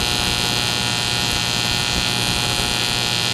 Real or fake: real